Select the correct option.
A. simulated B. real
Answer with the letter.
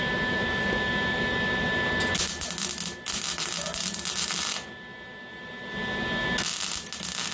B